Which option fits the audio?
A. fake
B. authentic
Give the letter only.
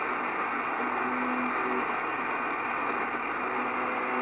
B